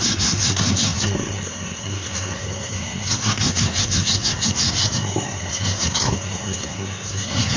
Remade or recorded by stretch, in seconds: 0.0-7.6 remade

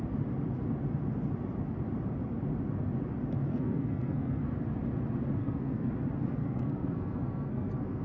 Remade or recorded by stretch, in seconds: 0.0-3.5 recorded; 3.5-4.6 remade; 4.6-5.4 recorded; 5.4-5.9 remade; 5.9-6.4 recorded; 6.4-8.0 remade